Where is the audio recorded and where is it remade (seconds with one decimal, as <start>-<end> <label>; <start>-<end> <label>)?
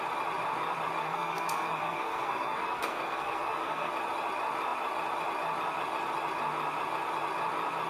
0.0-1.0 recorded; 1.0-3.9 remade; 3.9-7.9 recorded